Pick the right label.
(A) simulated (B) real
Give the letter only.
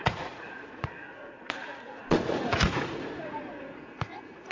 A